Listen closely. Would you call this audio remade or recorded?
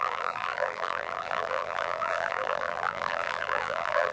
remade